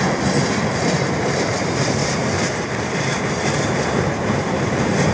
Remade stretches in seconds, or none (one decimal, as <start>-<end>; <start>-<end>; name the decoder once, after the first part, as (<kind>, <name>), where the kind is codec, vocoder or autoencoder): 2.0-5.1 (vocoder, BigVGAN v2)